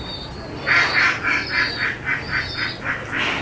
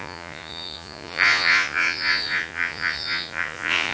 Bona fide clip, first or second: first